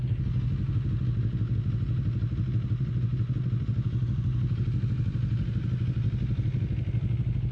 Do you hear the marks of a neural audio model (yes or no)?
no